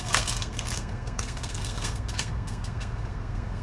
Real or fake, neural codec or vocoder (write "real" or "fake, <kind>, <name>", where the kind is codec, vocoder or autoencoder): fake, codec, SNAC